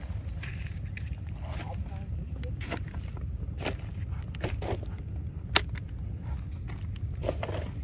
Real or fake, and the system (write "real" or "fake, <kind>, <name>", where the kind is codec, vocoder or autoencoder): real